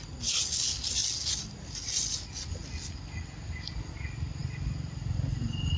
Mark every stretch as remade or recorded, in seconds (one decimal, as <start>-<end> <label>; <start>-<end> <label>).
0.0-5.8 recorded